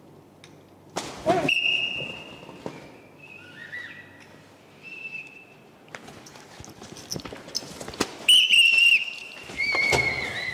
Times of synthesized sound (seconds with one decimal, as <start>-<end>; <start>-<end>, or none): 4.9-5.9; 9.2-9.8